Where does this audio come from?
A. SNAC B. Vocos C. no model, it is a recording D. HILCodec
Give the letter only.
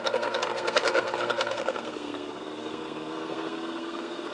A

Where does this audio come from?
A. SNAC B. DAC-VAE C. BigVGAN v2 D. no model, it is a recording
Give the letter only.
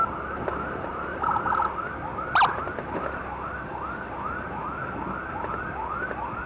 D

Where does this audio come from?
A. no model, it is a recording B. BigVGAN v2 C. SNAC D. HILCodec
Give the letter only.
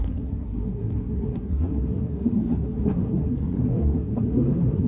C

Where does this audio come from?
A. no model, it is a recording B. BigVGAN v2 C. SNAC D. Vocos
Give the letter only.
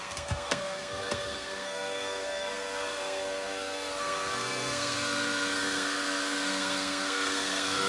C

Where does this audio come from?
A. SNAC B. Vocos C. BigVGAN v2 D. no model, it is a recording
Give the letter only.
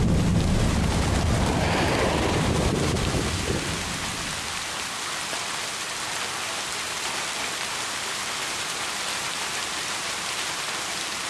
D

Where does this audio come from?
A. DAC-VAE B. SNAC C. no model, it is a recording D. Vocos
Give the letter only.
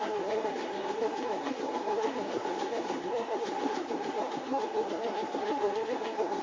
B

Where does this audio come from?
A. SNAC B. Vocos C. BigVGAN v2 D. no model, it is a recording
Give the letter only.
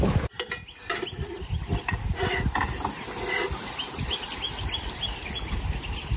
D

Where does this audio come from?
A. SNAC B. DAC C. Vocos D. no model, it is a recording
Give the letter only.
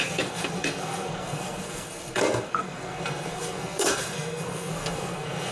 A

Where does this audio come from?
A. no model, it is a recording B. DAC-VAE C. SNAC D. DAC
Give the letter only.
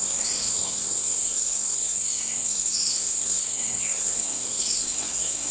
C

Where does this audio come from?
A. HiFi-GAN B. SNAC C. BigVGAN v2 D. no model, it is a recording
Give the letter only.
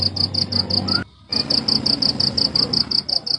D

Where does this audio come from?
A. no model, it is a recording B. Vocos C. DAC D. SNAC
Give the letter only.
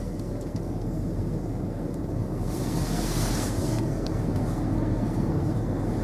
D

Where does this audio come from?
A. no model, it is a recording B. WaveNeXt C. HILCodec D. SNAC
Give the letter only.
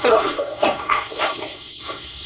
D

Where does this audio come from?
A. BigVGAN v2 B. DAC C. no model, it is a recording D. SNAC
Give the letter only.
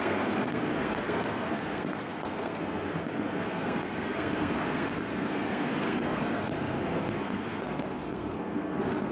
D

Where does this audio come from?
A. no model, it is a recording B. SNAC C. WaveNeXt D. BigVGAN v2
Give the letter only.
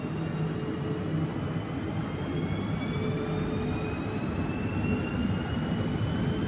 A